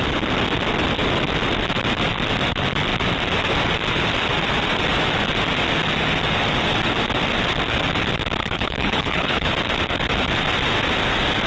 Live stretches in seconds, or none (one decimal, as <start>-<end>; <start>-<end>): 0.0-8.4; 9.5-11.5